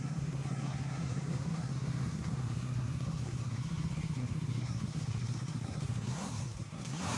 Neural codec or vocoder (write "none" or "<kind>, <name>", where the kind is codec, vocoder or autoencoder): codec, SNAC